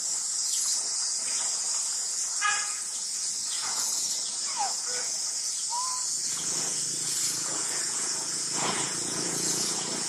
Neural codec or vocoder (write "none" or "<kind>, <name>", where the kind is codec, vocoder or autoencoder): vocoder, Vocos